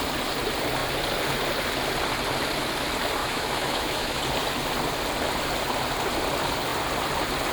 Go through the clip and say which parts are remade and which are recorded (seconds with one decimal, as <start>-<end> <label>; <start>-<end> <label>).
0.0-3.2 recorded; 3.2-4.2 remade; 4.2-7.5 recorded